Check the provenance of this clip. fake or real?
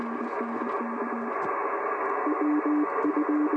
real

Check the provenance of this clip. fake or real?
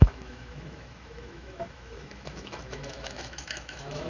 fake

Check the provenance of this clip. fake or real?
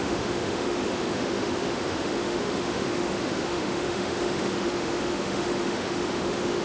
fake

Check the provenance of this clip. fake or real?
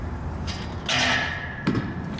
real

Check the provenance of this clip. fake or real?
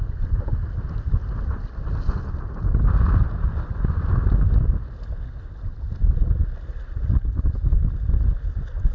real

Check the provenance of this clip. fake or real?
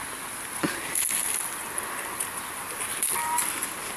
real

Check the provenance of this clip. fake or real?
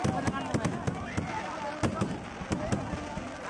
real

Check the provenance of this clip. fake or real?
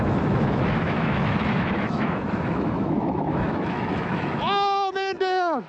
fake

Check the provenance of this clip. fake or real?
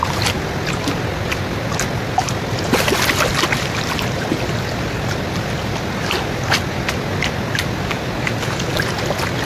real